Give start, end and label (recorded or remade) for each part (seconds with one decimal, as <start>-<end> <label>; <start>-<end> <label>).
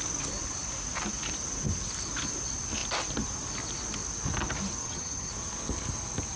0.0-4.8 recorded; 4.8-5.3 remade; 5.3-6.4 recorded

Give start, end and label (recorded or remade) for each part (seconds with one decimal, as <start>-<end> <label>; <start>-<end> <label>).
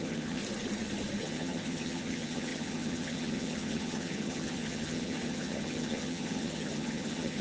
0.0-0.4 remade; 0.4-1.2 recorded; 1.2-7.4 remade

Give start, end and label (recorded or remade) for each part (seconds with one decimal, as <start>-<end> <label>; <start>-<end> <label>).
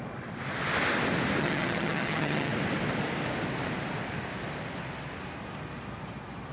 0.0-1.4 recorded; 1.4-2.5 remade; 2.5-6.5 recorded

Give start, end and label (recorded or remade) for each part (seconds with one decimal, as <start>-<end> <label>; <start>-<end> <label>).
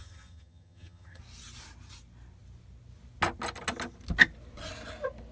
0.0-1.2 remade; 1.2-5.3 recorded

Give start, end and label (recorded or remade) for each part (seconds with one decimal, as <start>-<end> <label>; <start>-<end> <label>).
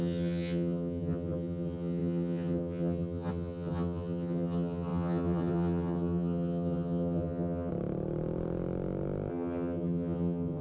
0.0-7.7 remade; 7.7-9.3 recorded; 9.3-10.6 remade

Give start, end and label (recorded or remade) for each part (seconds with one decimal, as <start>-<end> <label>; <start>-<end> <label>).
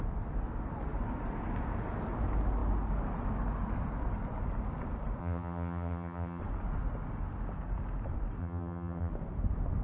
0.0-5.2 recorded; 5.2-6.4 remade; 6.4-8.4 recorded; 8.4-9.1 remade; 9.1-9.8 recorded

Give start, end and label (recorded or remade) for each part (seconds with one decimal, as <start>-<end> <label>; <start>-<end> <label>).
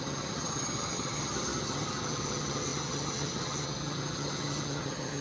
0.0-5.2 remade